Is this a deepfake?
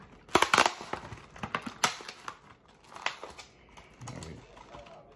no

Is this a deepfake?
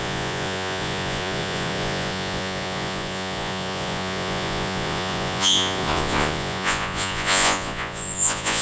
yes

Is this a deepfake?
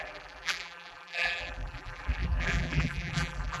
yes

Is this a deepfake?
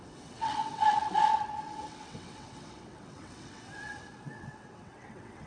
yes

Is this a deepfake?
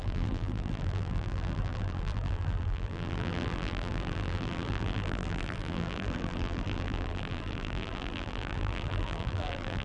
yes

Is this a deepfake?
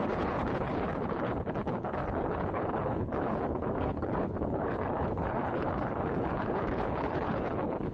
yes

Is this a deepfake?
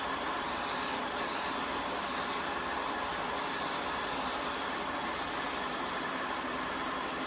no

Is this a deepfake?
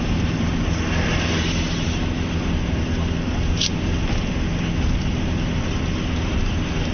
no